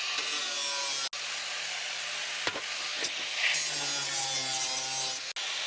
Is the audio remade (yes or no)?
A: no